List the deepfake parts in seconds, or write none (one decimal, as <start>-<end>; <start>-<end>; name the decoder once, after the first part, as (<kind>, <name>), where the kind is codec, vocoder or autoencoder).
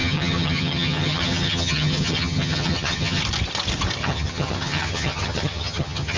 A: 0.0-3.2 (vocoder, HiFi-GAN); 4.0-6.2